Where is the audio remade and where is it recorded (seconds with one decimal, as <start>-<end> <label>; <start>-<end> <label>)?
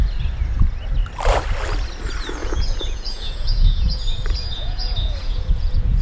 0.0-2.4 recorded; 2.4-6.0 remade